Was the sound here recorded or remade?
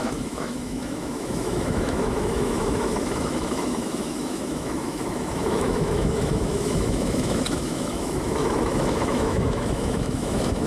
remade